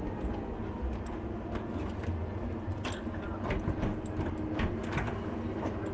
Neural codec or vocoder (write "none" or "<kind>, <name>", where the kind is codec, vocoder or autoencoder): none